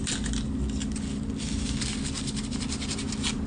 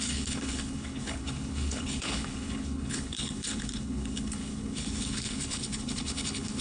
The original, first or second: first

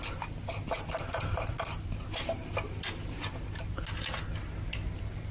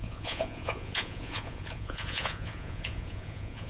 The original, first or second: first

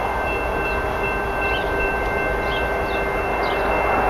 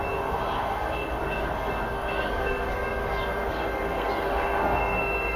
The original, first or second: first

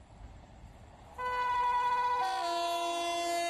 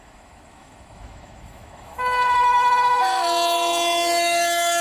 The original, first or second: first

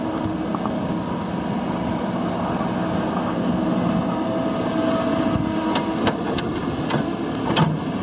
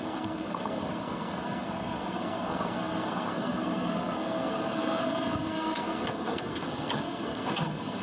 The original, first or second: first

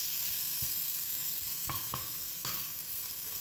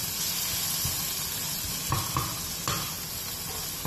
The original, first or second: second